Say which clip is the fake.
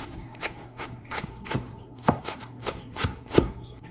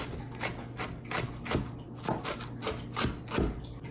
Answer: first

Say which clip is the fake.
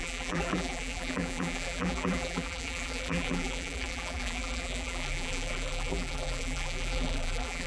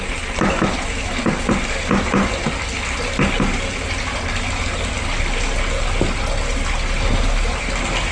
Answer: first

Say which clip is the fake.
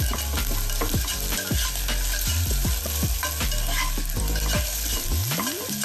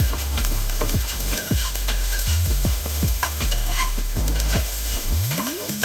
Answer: second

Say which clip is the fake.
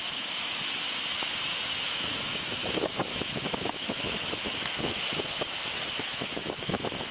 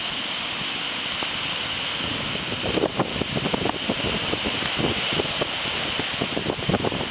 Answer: first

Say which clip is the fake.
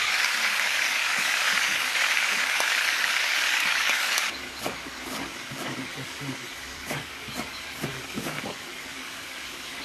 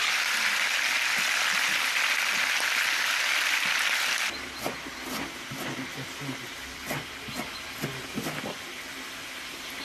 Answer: first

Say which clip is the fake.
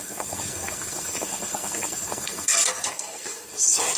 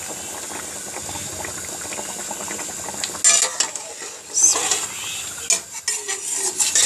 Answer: first